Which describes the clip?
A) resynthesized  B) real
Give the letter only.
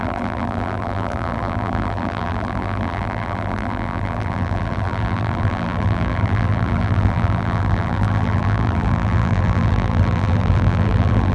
A